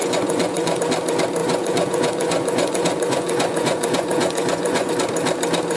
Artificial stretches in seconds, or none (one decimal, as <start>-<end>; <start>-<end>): 0.0-0.8; 1.4-4.9